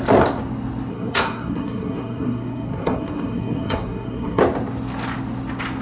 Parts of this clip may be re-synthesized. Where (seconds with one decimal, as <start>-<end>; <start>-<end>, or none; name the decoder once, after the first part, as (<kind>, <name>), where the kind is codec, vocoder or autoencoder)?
0.9-4.4 (codec, SNAC)